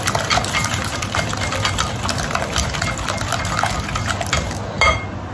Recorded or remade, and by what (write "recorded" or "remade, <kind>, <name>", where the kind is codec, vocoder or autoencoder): recorded